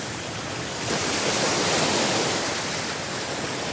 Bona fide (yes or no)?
no